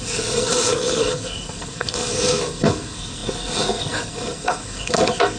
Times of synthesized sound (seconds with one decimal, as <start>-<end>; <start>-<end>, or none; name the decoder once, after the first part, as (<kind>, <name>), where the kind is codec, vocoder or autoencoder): 0.0-5.4 (codec, SNAC)